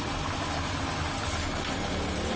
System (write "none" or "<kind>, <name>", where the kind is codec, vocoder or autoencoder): none